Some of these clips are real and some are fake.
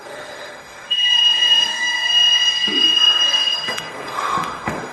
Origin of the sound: fake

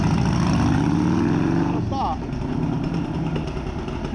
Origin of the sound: real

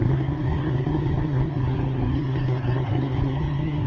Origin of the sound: fake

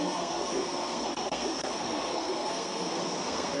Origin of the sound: fake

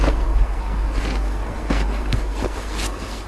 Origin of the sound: fake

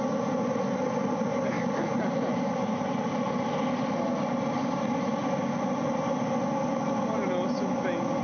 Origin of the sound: real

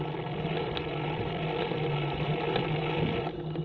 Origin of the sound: real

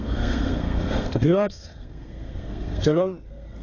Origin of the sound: fake